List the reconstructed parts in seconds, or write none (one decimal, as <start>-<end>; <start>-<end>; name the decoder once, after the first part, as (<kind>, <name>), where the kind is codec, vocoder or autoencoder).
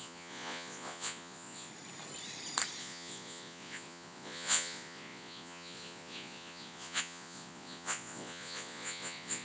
0.0-1.7 (vocoder, Vocos); 2.8-9.4